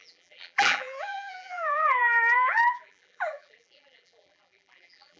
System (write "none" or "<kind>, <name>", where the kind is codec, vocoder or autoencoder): vocoder, BigVGAN v2